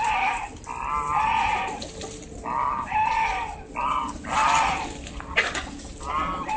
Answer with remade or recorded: recorded